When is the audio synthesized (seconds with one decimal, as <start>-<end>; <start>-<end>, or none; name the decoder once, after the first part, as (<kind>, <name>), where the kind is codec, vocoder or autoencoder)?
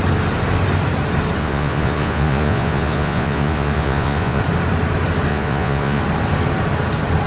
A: 1.4-4.4 (vocoder, Vocos); 5.3-6.0